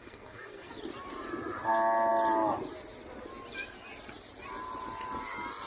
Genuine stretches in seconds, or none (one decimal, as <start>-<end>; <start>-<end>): 0.7-5.7